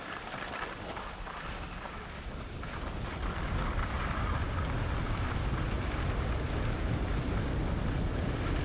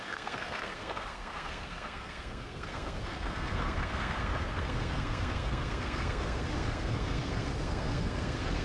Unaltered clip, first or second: first